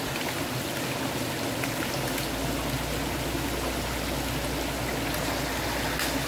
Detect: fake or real real